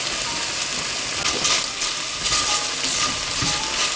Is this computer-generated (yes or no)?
no